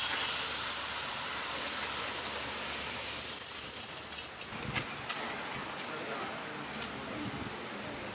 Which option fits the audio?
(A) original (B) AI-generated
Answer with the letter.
A